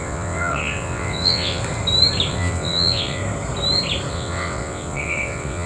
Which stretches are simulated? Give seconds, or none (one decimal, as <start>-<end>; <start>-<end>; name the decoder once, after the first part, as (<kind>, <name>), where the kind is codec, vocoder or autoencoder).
0.0-1.6 (vocoder, WaveNeXt); 2.3-3.2; 4.1-5.7